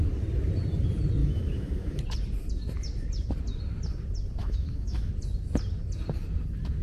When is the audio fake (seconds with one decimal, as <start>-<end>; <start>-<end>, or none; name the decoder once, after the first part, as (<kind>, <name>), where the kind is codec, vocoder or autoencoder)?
1.2-2.0 (autoencoder, DAC-VAE); 4.4-5.1